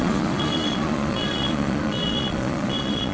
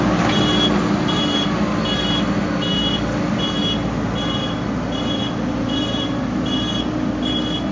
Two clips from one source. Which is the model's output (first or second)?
first